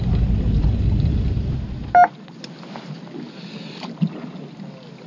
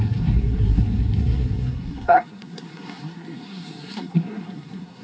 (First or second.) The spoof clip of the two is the second